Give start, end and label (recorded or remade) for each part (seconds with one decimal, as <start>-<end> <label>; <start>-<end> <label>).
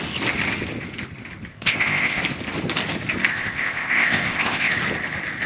0.0-1.5 recorded; 1.5-2.2 remade; 2.2-3.3 recorded; 3.3-4.7 remade; 4.7-5.5 recorded